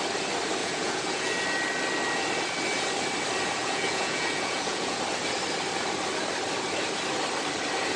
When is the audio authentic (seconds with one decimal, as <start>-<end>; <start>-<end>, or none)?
0.0-0.6; 1.3-3.6; 5.0-8.0